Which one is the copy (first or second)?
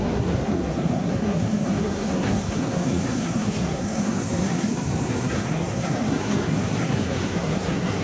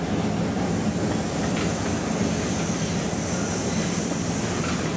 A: first